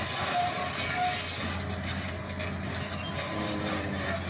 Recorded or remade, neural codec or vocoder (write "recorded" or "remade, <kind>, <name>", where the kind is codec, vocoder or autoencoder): recorded